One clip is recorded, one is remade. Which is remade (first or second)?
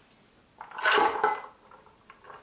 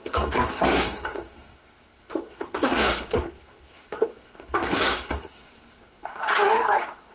second